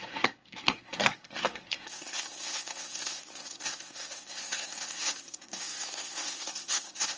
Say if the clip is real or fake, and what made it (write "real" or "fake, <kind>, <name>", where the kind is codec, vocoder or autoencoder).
fake, codec, SNAC